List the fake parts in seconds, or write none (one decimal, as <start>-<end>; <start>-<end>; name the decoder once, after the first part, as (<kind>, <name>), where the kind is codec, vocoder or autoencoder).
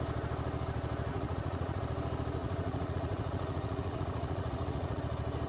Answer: 1.1-1.8 (vocoder, Vocos); 2.4-5.0